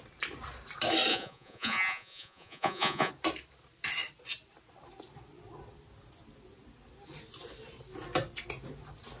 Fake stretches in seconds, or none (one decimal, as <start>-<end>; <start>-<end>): 1.1-3.1

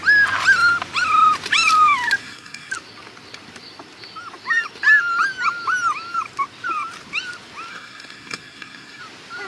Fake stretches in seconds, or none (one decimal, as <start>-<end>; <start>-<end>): 2.2-2.7; 7.7-9.0

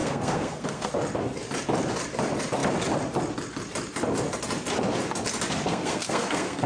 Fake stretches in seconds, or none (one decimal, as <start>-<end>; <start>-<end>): 0.0-0.9; 5.7-6.7

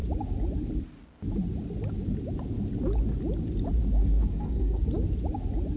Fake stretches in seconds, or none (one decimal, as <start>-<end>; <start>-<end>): 4.0-4.8

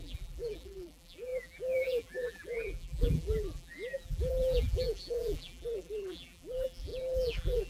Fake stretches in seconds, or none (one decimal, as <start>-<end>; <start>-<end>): 0.0-7.7

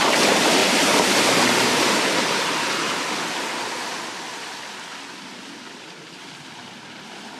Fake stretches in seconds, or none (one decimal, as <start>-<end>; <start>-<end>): 0.6-2.9

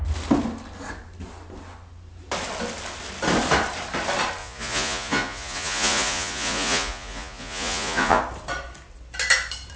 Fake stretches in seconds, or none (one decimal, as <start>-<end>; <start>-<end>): 4.4-8.2

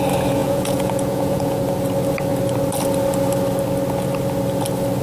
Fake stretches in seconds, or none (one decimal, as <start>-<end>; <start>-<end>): 0.4-1.6